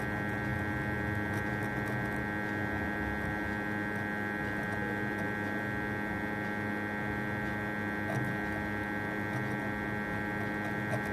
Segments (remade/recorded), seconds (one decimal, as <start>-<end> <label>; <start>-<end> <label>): 0.0-11.1 recorded